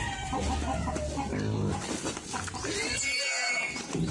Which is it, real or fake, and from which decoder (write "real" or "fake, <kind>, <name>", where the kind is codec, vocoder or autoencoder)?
real